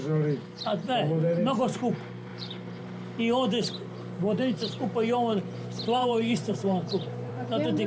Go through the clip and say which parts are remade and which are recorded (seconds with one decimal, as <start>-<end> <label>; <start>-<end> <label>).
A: 0.0-2.3 recorded; 2.3-2.8 remade; 2.8-6.0 recorded; 6.0-7.3 remade; 7.3-7.9 recorded